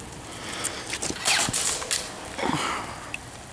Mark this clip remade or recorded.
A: recorded